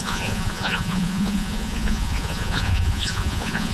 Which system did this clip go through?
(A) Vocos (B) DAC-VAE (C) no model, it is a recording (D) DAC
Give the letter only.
A